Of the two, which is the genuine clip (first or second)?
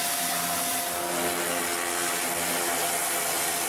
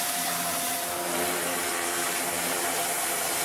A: first